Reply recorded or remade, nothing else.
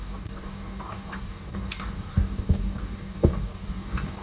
remade